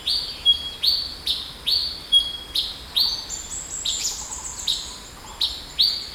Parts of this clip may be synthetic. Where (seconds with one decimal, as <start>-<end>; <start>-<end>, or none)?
none